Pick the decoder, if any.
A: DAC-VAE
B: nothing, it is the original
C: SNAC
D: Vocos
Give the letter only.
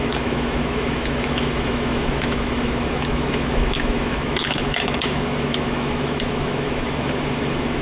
A